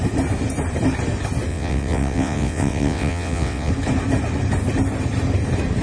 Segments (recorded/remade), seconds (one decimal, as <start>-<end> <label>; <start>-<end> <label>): 0.0-1.5 recorded; 1.5-3.7 remade; 3.7-5.8 recorded